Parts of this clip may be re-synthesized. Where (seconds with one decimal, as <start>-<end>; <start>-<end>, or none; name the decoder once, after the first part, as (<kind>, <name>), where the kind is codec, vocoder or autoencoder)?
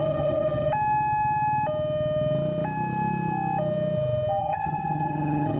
0.0-0.7 (vocoder, HiFi-GAN); 4.4-5.6